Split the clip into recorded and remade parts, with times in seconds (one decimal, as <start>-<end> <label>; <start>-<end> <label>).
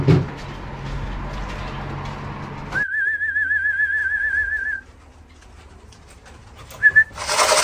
0.0-7.6 recorded